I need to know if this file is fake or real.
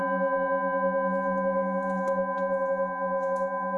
real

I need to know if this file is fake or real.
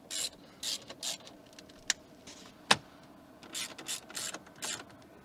real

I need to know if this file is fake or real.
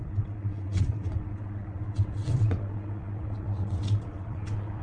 fake